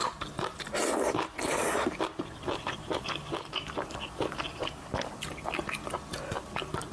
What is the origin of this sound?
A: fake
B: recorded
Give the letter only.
B